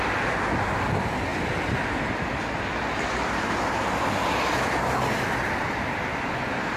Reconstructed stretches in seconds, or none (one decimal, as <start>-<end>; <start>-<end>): none